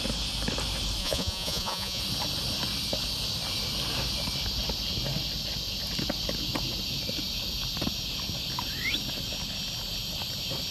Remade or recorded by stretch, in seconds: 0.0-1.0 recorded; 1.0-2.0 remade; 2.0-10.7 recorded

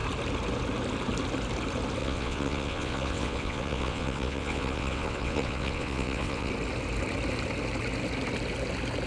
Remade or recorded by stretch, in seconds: 0.0-2.0 recorded; 2.0-6.5 remade; 6.5-9.1 recorded

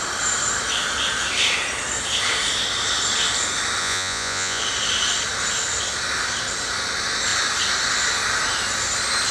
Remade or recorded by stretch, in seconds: 0.0-3.8 recorded; 3.8-4.6 remade; 4.6-9.3 recorded

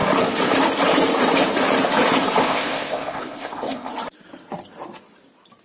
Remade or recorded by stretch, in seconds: 0.0-2.4 recorded; 2.4-3.9 remade; 3.9-5.6 recorded

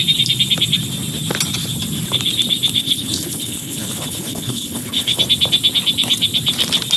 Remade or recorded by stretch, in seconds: 0.0-2.8 recorded; 2.8-5.2 remade; 5.2-7.0 recorded

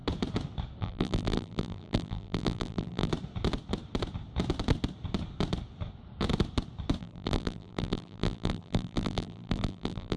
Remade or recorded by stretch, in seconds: 0.0-0.8 recorded; 0.8-3.1 remade; 3.1-7.0 recorded; 7.0-10.2 remade